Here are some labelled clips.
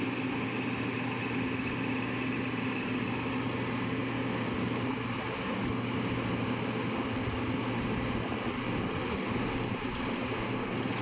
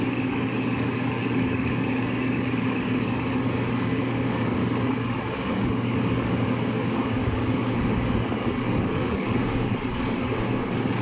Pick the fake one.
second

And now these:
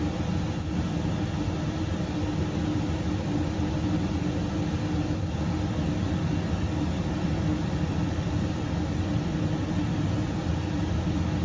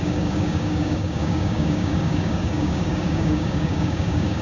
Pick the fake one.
second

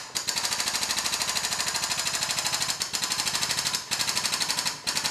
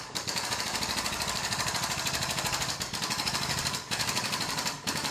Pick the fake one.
second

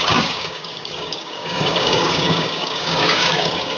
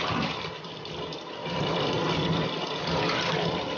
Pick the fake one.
first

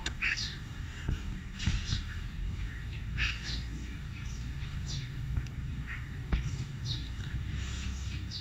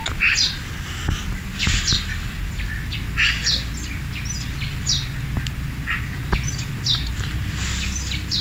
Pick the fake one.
first